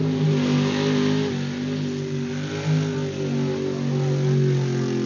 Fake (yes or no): no